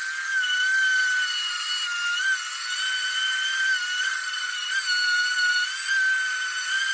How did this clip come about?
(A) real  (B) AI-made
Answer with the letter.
A